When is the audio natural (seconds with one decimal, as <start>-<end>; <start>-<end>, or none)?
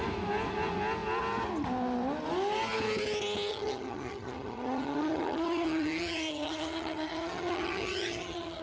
0.0-3.5